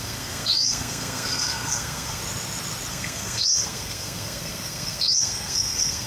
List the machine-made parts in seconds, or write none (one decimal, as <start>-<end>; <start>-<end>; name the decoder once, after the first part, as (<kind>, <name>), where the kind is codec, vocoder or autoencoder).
0.0-2.2 (codec, SNAC); 2.9-6.1